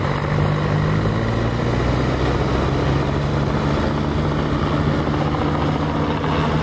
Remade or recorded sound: recorded